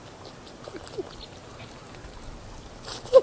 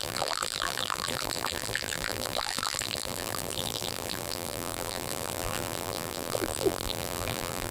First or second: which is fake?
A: second